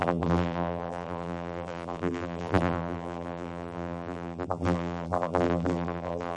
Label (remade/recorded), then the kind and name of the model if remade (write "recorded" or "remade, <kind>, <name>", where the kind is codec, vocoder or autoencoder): remade, vocoder, BigVGAN v2